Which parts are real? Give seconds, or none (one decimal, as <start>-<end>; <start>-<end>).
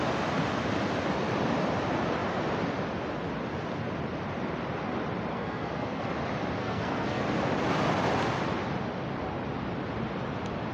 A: 0.0-5.3; 6.1-6.6; 7.2-10.7